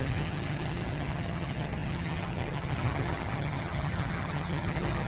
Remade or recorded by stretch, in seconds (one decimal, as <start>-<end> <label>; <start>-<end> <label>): 0.0-5.1 remade